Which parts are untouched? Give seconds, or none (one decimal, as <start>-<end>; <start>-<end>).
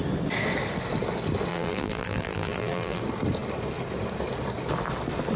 0.0-1.5; 3.0-5.4